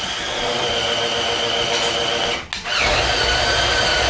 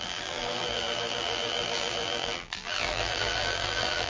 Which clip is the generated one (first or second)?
second